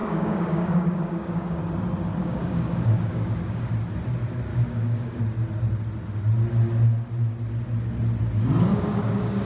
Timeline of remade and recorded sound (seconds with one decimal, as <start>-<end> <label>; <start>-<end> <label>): 0.0-1.6 remade; 1.6-2.2 recorded; 2.2-3.7 remade; 3.7-4.5 recorded; 4.5-5.2 remade; 5.2-8.7 recorded; 8.7-9.5 remade